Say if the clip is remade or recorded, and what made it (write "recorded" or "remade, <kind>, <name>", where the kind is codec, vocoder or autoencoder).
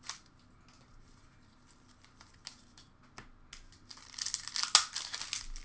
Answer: recorded